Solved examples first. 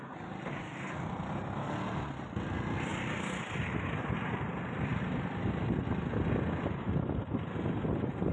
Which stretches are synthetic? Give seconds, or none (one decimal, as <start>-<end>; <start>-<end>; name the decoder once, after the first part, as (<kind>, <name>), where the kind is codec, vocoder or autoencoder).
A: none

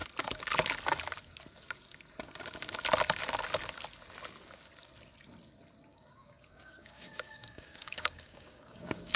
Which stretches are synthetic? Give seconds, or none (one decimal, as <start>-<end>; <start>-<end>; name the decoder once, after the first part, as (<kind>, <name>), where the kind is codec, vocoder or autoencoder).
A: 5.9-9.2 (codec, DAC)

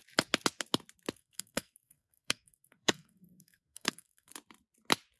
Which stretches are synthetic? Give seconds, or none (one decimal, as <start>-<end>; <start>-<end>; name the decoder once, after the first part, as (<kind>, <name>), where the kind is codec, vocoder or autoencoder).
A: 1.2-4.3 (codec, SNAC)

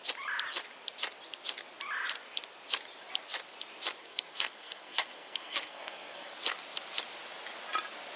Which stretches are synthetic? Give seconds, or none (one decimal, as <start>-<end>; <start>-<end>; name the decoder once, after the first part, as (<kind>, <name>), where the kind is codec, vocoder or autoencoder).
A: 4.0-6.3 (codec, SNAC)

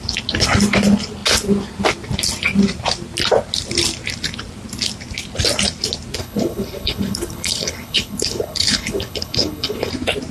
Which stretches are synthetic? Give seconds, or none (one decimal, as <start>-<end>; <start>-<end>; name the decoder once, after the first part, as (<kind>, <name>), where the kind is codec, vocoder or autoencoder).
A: 6.2-9.9 (codec, HILCodec)

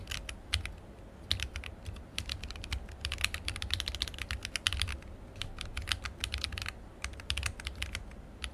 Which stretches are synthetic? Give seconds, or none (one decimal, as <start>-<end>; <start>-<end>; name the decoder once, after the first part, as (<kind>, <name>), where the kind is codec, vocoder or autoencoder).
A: none

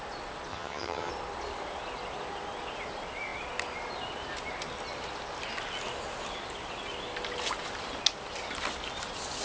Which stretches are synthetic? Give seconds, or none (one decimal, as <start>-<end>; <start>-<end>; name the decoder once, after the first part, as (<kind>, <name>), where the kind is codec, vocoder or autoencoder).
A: 0.5-1.1 (vocoder, HiFi-GAN)

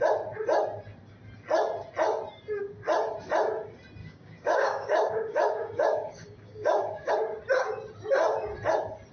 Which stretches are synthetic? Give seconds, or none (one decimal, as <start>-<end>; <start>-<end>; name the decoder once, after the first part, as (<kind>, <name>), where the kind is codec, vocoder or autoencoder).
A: 4.0-7.1 (codec, DAC)